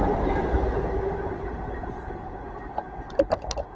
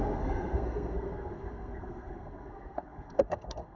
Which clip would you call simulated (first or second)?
second